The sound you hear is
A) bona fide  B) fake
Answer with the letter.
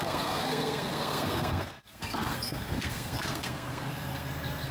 B